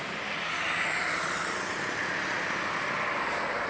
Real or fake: real